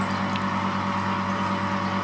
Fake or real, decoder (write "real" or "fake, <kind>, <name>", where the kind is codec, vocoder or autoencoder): real